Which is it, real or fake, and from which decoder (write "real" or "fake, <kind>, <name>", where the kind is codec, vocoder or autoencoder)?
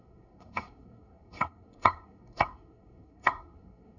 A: fake, codec, SNAC